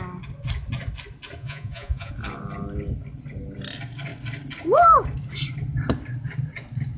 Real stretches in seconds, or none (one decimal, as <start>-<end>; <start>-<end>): 0.0-1.4; 2.1-7.0